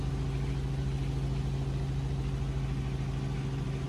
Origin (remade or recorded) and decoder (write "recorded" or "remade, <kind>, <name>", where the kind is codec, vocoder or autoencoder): recorded